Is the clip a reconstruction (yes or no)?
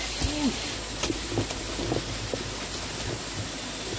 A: no